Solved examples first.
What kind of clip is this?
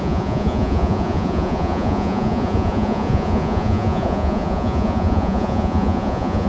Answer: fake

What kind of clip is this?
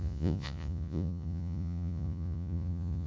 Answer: fake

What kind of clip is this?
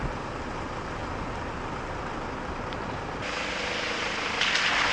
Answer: real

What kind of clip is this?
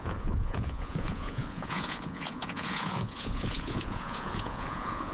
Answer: fake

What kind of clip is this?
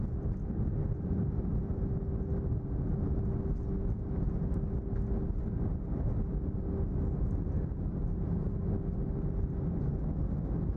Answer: real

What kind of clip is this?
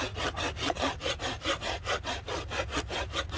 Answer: real